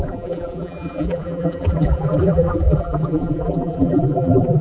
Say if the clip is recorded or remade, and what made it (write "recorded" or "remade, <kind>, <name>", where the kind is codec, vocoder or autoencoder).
remade, vocoder, BigVGAN v2